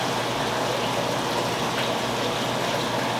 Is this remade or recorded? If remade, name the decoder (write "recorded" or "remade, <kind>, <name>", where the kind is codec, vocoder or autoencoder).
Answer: recorded